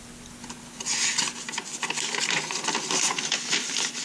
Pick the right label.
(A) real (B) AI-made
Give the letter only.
A